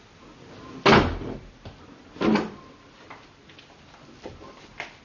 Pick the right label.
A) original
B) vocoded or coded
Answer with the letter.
A